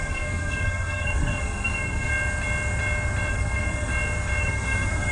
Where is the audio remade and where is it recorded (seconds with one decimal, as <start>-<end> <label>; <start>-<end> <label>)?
0.0-2.1 remade; 2.1-3.3 recorded; 3.3-3.9 remade; 3.9-4.4 recorded; 4.4-5.1 remade